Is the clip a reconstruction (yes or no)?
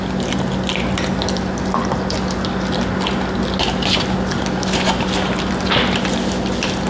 no